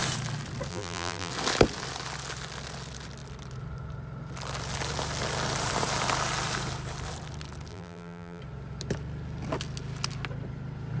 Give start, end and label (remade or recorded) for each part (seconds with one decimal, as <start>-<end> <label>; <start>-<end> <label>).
0.0-0.7 recorded; 0.7-1.3 remade; 1.3-7.7 recorded; 7.7-8.4 remade; 8.4-11.0 recorded